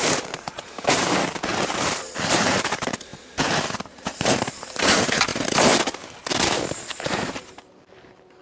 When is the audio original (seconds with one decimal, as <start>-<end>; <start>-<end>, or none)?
1.5-2.3; 3.1-3.8; 5.3-7.0